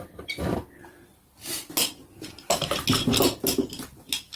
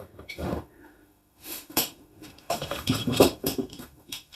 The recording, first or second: first